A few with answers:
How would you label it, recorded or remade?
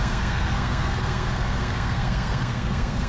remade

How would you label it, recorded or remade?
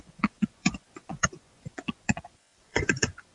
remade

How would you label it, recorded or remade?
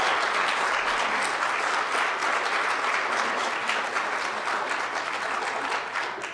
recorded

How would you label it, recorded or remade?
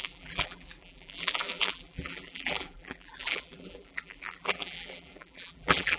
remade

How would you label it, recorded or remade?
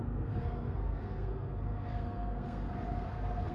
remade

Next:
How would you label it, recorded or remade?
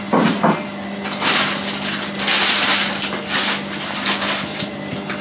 recorded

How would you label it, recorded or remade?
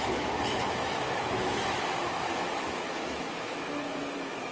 remade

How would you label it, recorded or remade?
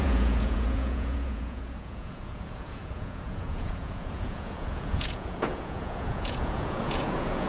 remade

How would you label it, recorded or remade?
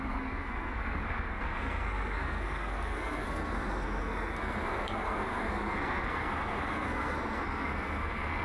remade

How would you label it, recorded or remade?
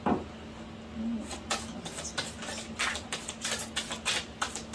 recorded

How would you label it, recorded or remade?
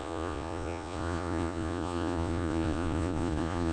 remade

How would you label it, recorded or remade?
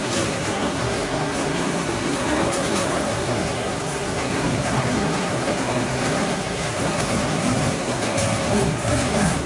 remade